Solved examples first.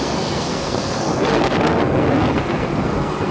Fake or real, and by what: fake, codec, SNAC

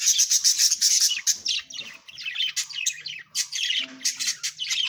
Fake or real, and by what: real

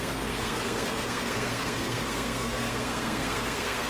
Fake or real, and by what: fake, codec, SNAC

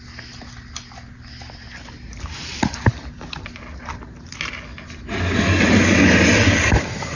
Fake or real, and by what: real